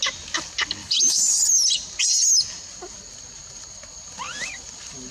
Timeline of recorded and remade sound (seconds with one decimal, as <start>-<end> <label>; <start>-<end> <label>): 0.0-0.8 recorded; 0.8-1.4 remade; 1.4-5.1 recorded